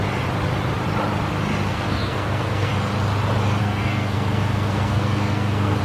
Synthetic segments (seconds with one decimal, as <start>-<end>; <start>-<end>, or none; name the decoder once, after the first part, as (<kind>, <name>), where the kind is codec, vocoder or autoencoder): 1.7-2.7 (codec, SNAC); 3.6-5.8